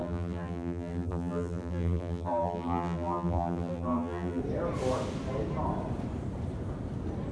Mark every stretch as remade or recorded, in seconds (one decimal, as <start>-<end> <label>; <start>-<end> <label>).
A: 0.0-4.4 remade; 4.4-7.3 recorded